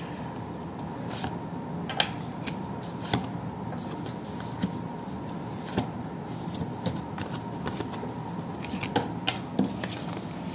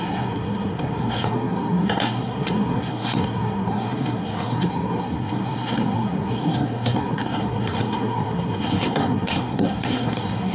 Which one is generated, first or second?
second